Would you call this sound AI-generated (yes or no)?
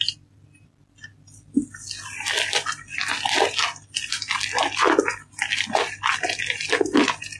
no